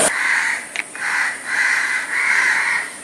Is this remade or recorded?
remade